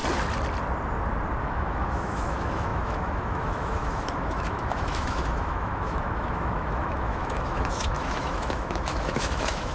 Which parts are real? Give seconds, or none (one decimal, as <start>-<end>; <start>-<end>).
0.0-1.4